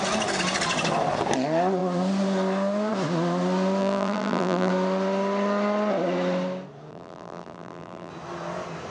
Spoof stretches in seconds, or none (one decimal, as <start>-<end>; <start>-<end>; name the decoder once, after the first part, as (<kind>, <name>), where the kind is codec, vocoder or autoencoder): 3.8-4.7 (vocoder, BigVGAN v2); 6.9-8.1